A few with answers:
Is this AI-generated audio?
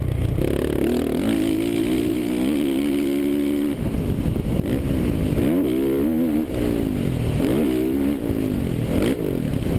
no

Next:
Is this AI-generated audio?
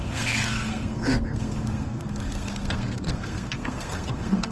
yes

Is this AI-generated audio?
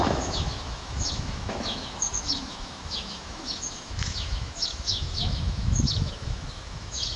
yes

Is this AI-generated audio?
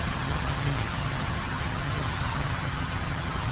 yes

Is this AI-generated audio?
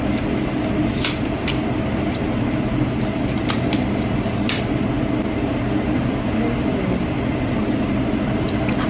no